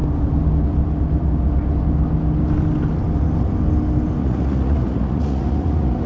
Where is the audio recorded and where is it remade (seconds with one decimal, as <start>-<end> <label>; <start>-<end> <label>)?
0.0-4.2 recorded; 4.2-6.1 remade